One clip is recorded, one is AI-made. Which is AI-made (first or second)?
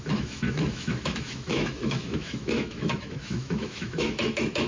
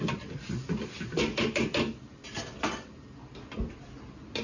first